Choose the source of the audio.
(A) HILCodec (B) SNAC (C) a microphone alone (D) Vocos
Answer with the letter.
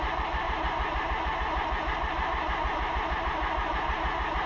C